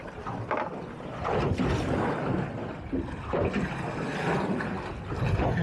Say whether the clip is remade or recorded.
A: recorded